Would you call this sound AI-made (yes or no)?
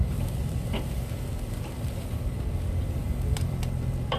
yes